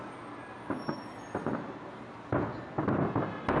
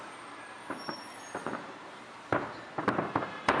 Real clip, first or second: first